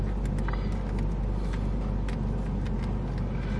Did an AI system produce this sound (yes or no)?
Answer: no